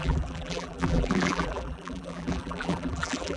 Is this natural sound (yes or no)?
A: no